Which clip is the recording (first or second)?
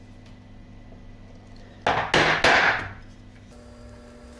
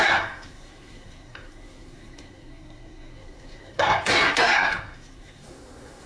first